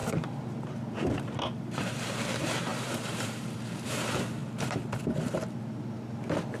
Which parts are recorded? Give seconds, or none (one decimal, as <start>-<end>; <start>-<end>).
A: 4.4-6.6